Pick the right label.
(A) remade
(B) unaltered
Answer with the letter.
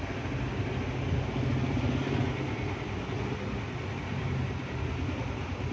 B